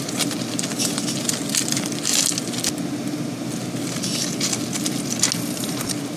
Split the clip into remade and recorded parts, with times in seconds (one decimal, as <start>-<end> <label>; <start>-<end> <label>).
0.0-6.2 recorded